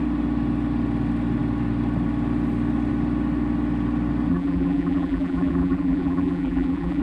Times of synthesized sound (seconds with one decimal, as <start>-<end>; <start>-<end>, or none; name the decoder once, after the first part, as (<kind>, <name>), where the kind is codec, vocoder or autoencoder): 4.3-7.0 (vocoder, BigVGAN v2)